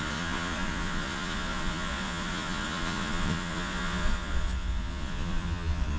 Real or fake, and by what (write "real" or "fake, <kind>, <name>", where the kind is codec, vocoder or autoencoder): fake, vocoder, Vocos